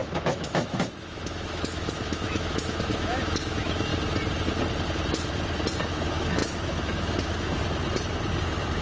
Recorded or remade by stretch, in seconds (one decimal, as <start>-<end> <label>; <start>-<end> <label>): 0.0-3.9 remade; 3.9-5.9 recorded; 5.9-7.6 remade; 7.6-8.4 recorded; 8.4-8.8 remade